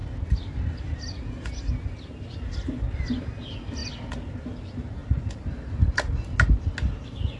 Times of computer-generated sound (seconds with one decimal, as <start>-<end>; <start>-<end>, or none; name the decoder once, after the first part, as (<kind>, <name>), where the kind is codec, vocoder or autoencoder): none